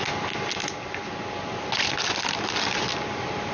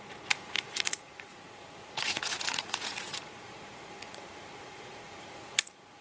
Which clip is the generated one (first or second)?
second